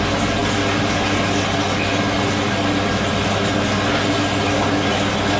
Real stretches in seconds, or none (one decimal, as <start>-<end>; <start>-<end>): 0.0-5.4